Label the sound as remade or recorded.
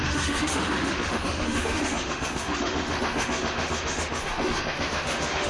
remade